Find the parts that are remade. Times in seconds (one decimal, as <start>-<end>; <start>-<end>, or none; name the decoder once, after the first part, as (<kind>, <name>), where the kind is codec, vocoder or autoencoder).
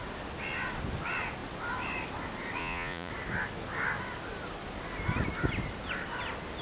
2.6-3.1 (vocoder, Vocos)